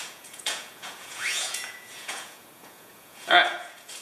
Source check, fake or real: fake